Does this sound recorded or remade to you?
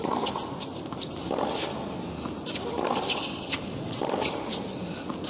recorded